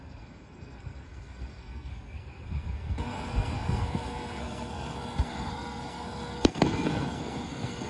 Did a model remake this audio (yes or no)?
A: yes